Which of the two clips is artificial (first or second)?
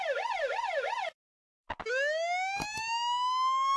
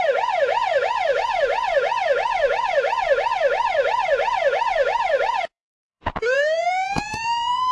second